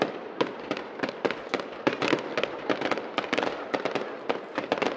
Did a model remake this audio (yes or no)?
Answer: no